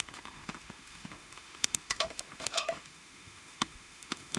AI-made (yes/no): yes